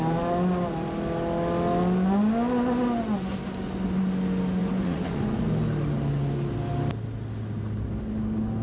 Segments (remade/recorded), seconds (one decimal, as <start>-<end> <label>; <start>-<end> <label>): 0.0-4.6 recorded; 4.6-5.4 remade; 5.4-8.6 recorded